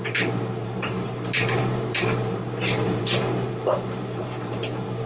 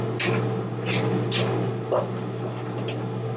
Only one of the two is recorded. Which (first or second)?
second